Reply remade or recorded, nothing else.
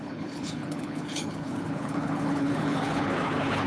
remade